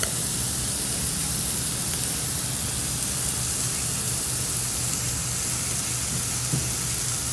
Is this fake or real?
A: real